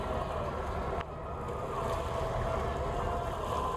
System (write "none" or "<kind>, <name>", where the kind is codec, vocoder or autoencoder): none